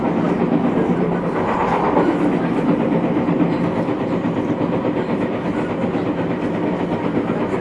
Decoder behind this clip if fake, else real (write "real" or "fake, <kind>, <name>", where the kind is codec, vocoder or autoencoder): real